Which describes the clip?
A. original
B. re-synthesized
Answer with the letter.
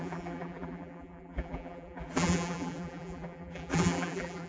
B